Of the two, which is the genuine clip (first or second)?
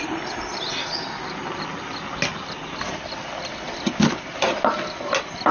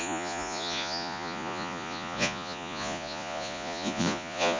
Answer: first